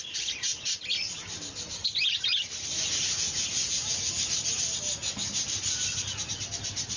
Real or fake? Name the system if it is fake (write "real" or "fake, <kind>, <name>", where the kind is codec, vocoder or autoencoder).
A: real